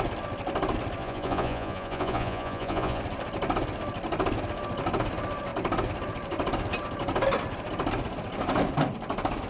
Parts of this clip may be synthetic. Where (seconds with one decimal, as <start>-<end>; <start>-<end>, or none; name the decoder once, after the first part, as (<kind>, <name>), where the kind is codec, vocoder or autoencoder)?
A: 1.0-3.0 (vocoder, Vocos)